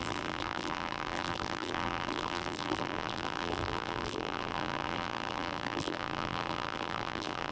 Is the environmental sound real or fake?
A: fake